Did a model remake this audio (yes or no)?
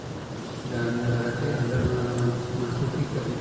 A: no